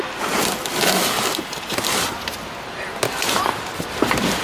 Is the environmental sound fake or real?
fake